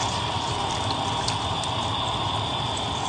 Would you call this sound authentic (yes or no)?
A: yes